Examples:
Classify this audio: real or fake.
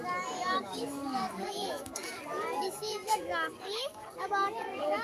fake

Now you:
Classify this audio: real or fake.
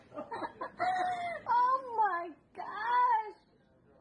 real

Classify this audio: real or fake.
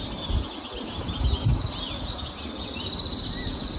real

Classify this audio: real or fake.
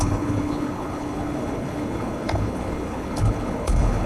fake